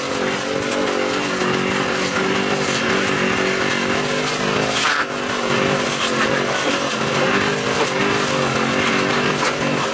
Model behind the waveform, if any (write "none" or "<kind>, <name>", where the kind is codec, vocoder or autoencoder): none